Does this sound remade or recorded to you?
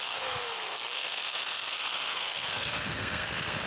remade